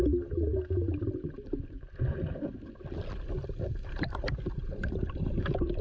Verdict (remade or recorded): recorded